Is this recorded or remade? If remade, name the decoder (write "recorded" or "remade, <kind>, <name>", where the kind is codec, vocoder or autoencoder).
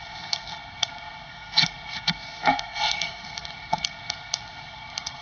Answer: remade, codec, SNAC